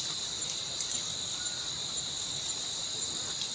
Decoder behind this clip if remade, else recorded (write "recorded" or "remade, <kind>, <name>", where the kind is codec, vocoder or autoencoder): recorded